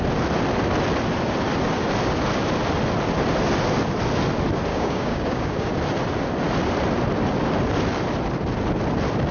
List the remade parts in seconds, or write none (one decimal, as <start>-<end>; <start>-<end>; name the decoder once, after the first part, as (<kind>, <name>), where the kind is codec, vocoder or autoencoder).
4.7-5.7 (codec, DAC)